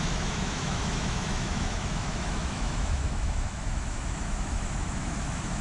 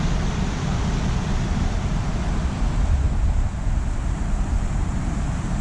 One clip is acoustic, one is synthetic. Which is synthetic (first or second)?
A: first